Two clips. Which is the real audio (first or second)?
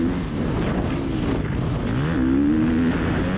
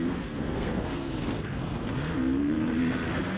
first